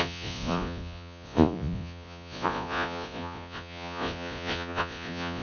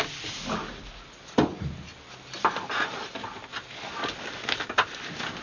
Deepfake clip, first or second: first